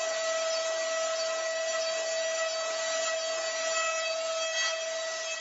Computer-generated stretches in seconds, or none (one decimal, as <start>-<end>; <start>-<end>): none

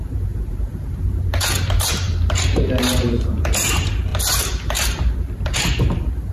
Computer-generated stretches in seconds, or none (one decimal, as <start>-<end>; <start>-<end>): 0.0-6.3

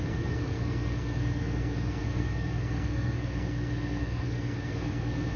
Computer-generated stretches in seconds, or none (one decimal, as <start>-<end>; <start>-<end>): 0.0-5.4

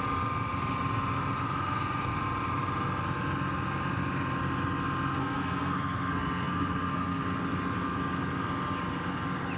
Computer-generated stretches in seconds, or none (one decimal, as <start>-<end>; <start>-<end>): 5.2-7.2

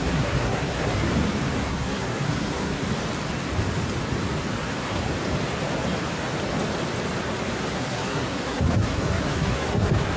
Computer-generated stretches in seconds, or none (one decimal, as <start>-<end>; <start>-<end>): 0.0-1.1; 1.6-2.8; 4.6-5.0; 7.7-10.2